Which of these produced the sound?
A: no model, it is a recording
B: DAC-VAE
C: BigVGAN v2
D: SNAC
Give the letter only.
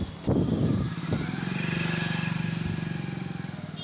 A